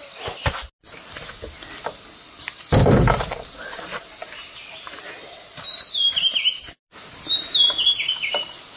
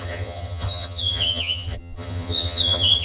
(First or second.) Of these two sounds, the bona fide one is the first